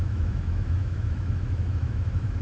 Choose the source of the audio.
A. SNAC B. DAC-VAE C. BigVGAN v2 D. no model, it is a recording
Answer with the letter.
B